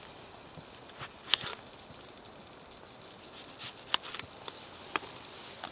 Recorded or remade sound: recorded